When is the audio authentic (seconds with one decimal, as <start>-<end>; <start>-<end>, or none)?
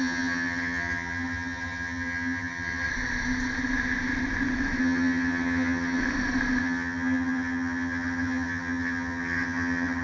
2.9-4.8; 6.0-6.6